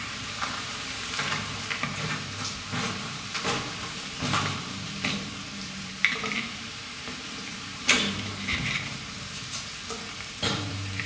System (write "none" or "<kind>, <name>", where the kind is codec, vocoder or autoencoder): vocoder, BigVGAN v2